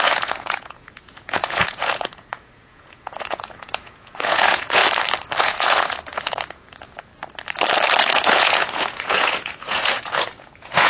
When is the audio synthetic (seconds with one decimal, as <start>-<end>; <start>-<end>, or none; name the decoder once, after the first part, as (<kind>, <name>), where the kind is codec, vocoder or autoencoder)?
0.0-4.8 (vocoder, Vocos); 5.4-7.1; 8.0-10.9